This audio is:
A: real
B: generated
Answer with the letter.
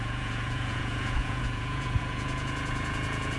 B